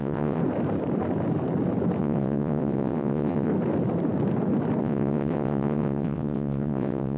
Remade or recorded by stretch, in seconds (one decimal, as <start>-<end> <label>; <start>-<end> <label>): 0.0-0.4 remade; 0.4-2.0 recorded; 2.0-3.5 remade; 3.5-4.8 recorded; 4.8-7.2 remade